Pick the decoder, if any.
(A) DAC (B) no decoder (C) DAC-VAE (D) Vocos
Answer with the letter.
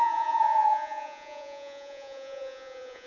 D